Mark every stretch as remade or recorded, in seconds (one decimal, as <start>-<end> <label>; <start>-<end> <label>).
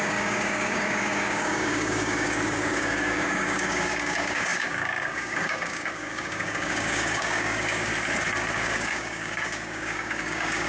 0.0-7.9 remade; 7.9-8.5 recorded; 8.5-10.7 remade